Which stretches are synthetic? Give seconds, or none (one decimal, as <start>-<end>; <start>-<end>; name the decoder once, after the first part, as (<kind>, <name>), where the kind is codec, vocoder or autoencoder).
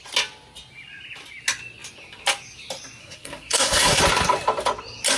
3.0-4.0 (codec, SNAC)